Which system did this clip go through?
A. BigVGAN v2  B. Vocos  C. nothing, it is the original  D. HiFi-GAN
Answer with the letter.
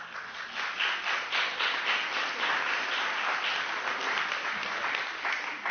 C